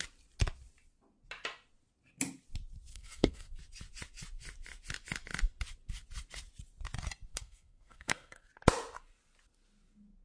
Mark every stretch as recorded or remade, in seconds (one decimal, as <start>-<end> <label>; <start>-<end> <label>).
0.0-2.9 recorded; 2.9-3.6 remade; 3.6-7.3 recorded; 7.3-8.5 remade; 8.5-10.2 recorded

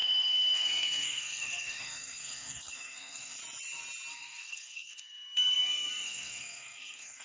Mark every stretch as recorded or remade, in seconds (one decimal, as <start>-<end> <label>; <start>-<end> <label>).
0.0-3.4 remade; 3.4-4.1 recorded; 4.1-7.2 remade